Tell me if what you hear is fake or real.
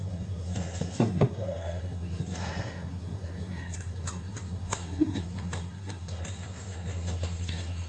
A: fake